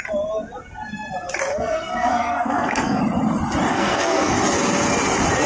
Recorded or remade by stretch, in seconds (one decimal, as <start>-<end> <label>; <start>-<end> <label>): 0.0-1.5 recorded; 1.5-3.0 remade; 3.0-3.7 recorded; 3.7-4.3 remade; 4.3-5.5 recorded